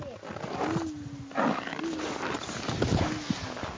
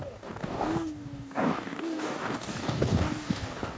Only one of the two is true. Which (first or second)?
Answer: first